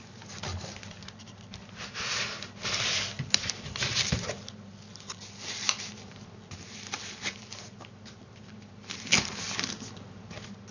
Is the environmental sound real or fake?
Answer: real